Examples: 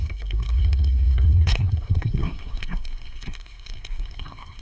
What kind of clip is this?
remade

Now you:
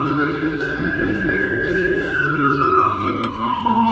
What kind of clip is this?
remade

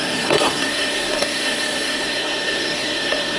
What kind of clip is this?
remade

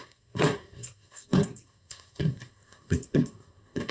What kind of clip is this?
remade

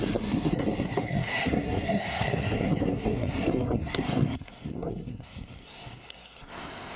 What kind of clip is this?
remade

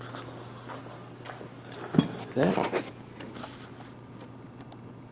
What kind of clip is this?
recorded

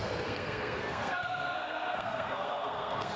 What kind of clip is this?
remade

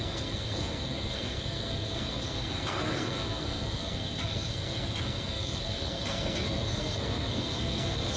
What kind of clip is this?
remade